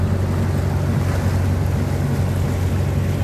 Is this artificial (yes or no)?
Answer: no